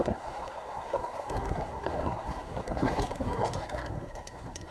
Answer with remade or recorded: remade